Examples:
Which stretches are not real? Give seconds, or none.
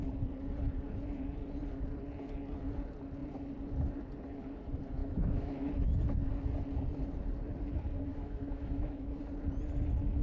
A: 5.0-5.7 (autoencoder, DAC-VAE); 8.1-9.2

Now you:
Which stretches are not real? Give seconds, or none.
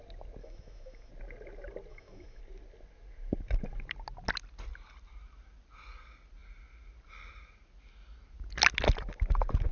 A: 0.4-1.1 (autoencoder, DAC-VAE); 1.9-2.4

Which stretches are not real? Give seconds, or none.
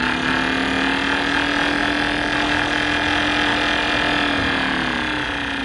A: none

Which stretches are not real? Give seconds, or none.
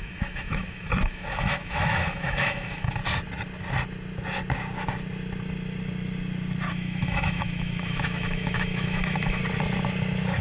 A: 0.0-3.0 (autoencoder, DAC-VAE); 6.7-9.4